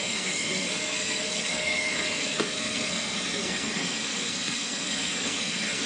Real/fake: fake